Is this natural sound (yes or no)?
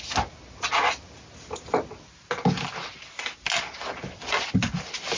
yes